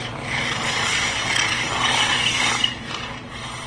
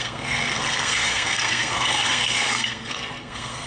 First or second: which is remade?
second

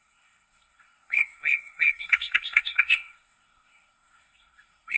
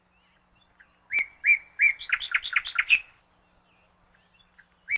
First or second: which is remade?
first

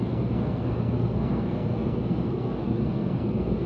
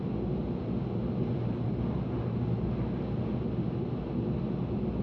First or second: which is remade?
first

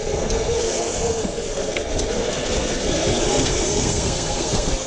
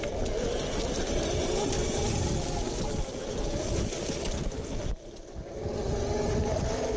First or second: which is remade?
first